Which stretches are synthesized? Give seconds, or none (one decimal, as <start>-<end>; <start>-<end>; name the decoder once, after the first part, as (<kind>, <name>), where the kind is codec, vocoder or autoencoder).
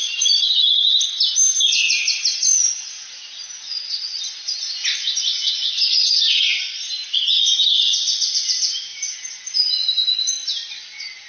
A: none